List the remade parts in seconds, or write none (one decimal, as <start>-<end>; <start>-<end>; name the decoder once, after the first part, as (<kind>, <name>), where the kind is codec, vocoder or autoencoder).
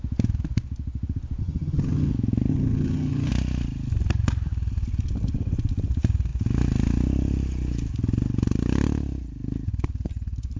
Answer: 1.4-2.1 (vocoder, HiFi-GAN); 2.5-3.3